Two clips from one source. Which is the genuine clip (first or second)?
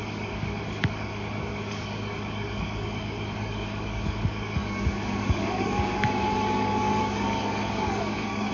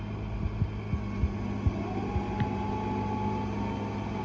second